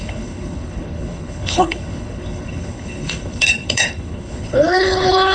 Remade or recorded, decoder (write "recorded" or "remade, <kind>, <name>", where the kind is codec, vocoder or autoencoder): remade, codec, HILCodec